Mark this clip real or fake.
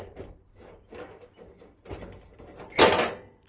real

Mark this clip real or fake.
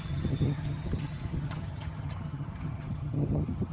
fake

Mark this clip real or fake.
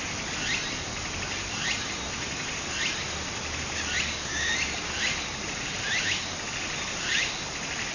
real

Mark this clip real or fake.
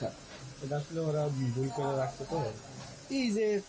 real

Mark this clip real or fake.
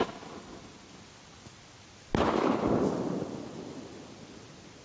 real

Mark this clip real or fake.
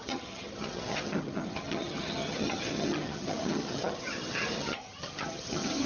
fake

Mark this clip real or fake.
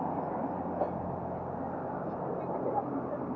real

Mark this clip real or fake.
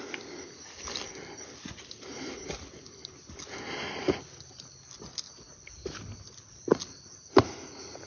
real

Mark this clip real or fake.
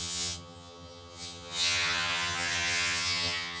fake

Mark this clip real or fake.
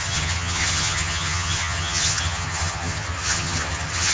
fake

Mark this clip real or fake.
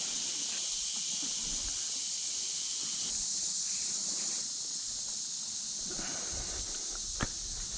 real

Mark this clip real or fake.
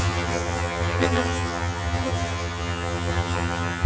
fake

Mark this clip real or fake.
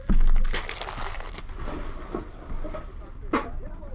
real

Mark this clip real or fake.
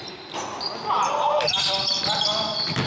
real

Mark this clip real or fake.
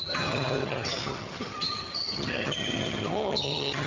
fake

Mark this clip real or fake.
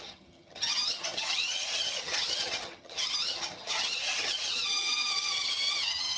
fake